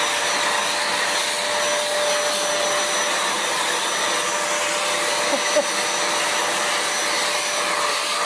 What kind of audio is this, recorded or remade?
recorded